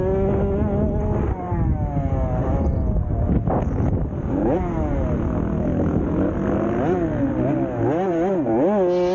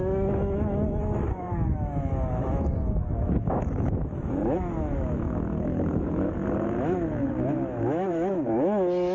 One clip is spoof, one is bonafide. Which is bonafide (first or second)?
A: first